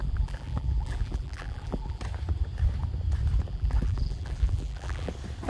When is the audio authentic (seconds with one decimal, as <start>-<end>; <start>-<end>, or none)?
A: 2.0-3.5; 5.1-5.5